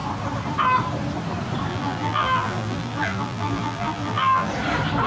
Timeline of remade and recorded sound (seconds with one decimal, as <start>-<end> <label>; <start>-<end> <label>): 0.0-1.7 recorded; 1.7-4.5 remade; 4.5-5.1 recorded